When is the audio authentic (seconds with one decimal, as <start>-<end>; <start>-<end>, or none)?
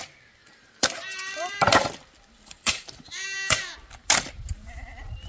0.0-0.4; 3.6-5.3